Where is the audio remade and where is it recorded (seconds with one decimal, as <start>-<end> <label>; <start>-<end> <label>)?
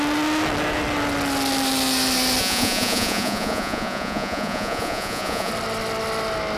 0.0-2.4 recorded; 2.4-5.5 remade; 5.5-6.6 recorded